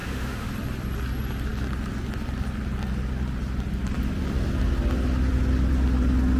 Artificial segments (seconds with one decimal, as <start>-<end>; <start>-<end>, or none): 0.0-0.5